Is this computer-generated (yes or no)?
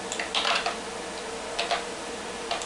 no